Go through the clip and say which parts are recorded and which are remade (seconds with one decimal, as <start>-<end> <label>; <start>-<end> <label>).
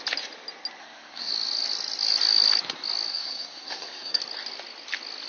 0.0-0.8 recorded; 0.8-1.3 remade; 1.3-3.1 recorded; 3.1-4.2 remade; 4.2-5.3 recorded